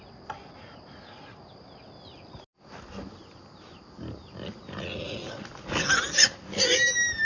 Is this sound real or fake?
real